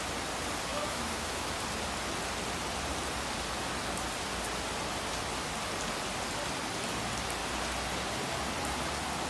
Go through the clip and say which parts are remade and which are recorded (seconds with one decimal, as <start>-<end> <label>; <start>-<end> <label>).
0.0-0.7 recorded; 0.7-1.5 remade; 1.5-9.3 recorded